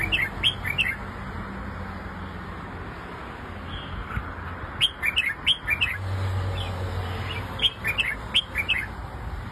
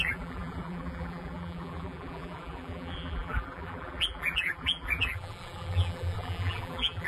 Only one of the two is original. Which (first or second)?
first